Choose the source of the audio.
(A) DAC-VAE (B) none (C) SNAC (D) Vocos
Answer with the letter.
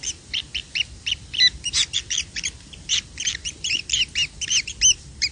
B